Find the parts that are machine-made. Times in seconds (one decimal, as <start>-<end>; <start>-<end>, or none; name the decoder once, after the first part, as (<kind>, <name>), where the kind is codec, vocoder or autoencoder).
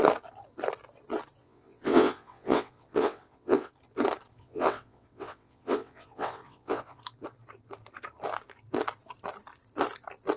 1.4-3.7 (vocoder, WaveNeXt); 4.4-7.0